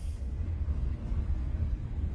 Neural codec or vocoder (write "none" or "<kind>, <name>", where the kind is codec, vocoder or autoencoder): codec, SNAC